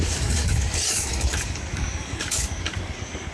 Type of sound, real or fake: fake